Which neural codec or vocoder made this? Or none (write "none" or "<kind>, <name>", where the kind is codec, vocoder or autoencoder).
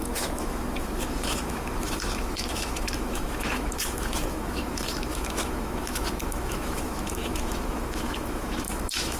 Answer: autoencoder, DAC-VAE